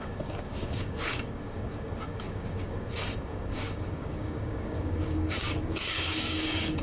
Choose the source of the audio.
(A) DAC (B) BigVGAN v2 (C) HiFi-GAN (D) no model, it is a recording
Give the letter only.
A